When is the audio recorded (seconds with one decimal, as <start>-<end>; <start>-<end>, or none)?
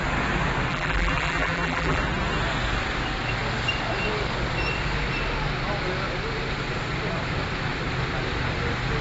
0.0-0.7; 2.0-9.0